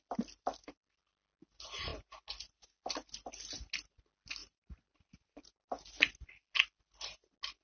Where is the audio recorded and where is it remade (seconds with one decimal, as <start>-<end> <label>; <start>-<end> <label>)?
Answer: 0.0-4.4 recorded; 4.4-5.9 remade; 5.9-7.6 recorded